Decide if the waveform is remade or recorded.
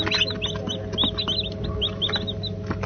recorded